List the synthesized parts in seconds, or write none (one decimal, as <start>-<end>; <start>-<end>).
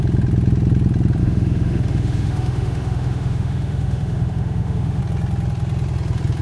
1.2-5.0